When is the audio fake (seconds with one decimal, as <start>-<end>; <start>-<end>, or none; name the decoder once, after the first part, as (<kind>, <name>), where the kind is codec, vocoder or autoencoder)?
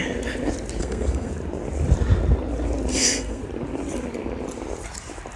0.8-1.3 (codec, SNAC); 2.9-3.4